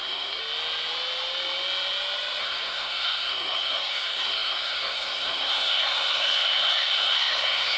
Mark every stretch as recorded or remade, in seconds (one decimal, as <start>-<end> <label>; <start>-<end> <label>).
0.0-0.4 remade; 0.4-2.4 recorded; 2.4-7.8 remade